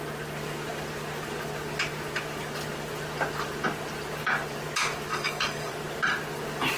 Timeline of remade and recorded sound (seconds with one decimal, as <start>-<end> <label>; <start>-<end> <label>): 0.0-5.1 recorded; 5.1-5.7 remade; 5.7-6.8 recorded